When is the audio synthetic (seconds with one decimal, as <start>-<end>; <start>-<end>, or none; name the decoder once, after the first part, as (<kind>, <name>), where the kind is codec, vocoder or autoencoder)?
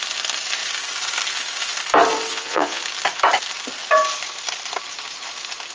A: 2.3-2.8 (vocoder, Vocos)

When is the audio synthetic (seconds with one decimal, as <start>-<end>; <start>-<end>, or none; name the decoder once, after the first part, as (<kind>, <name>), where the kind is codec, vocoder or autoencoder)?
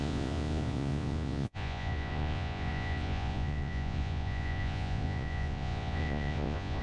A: 0.0-6.8 (vocoder, Vocos)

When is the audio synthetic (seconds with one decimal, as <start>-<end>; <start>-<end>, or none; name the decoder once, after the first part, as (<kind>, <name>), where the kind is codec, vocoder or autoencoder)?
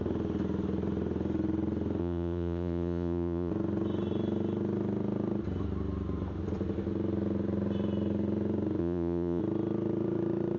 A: 2.0-3.5 (vocoder, Vocos); 8.8-9.4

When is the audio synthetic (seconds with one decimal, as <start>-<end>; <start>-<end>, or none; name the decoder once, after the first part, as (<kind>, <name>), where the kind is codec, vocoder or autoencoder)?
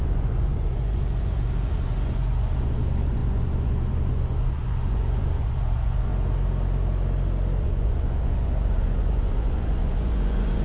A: 0.0-6.1 (vocoder, Vocos); 7.6-10.6